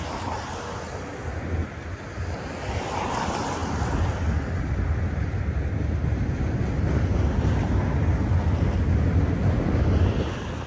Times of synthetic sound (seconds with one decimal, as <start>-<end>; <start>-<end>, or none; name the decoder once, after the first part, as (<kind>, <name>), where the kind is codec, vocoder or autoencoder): none